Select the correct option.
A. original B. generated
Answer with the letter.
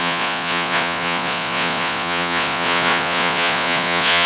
B